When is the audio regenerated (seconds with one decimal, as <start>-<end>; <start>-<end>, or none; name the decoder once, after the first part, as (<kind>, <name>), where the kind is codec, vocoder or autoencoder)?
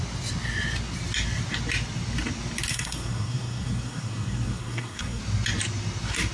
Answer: 2.7-5.2 (codec, SNAC)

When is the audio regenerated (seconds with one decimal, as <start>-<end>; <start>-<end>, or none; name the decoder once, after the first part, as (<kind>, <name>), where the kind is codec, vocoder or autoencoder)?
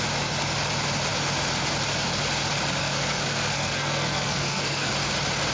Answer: 2.8-4.9 (codec, SNAC)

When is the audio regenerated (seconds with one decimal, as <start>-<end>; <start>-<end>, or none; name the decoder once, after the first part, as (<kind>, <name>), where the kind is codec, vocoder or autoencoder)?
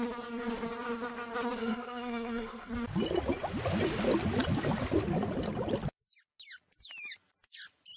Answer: 1.6-2.7 (codec, SNAC)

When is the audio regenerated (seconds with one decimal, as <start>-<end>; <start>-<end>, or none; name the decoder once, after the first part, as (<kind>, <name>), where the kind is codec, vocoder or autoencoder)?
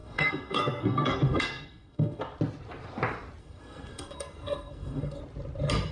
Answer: 0.0-2.2 (codec, SNAC); 3.4-5.2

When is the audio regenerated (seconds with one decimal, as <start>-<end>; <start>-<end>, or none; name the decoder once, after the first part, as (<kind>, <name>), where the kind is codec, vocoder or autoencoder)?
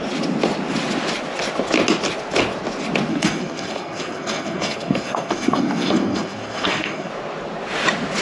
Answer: 3.1-7.1 (codec, SNAC)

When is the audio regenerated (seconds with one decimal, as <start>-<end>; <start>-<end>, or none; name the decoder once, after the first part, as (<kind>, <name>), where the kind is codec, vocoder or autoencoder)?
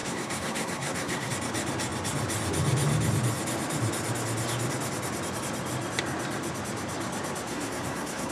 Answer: 0.0-1.3 (codec, SNAC); 7.5-8.3